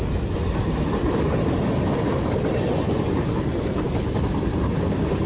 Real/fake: real